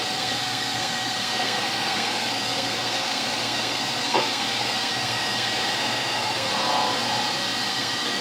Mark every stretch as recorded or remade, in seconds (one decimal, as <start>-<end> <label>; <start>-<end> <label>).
0.0-6.5 remade; 6.5-7.7 recorded; 7.7-8.2 remade